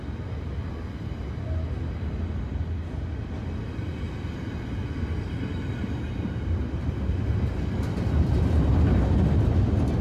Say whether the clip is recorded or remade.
recorded